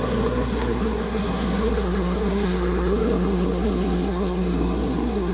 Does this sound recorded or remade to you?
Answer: remade